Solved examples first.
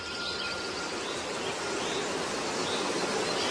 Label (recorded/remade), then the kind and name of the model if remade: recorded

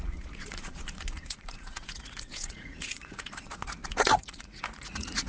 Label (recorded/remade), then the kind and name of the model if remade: remade, vocoder, Vocos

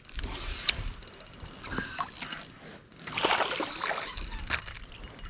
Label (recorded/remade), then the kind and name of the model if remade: recorded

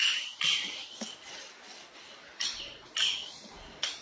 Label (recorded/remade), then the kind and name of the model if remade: recorded